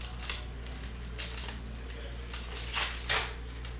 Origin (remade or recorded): recorded